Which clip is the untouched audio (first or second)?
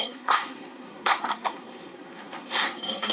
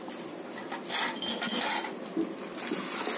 second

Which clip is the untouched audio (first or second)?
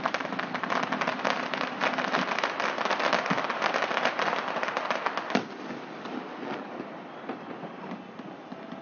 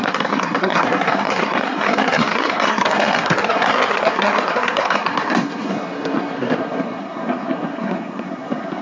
first